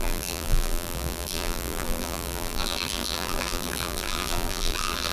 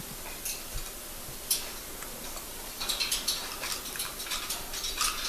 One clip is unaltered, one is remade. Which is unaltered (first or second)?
second